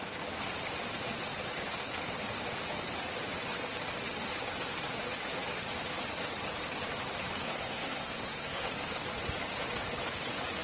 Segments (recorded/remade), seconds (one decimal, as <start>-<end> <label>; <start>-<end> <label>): 0.0-7.4 recorded; 7.4-8.7 remade; 8.7-10.6 recorded